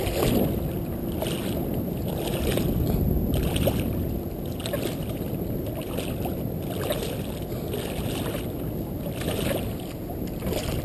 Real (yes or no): yes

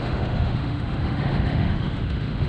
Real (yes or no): no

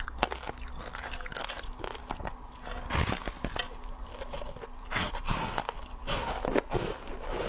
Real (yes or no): yes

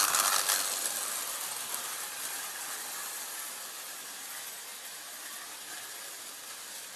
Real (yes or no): yes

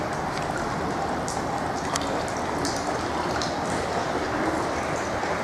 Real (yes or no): yes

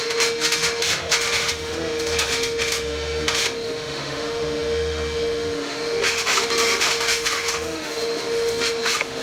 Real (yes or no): no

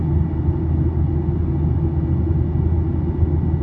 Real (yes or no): yes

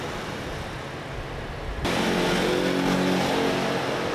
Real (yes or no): yes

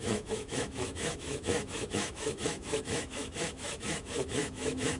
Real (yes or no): no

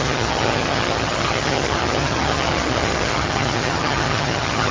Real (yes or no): no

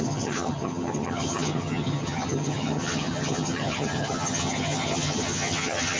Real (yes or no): no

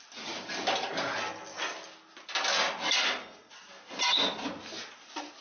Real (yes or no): yes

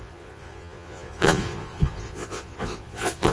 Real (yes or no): no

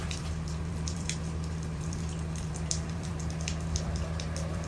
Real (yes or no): no